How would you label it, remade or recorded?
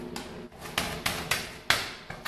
recorded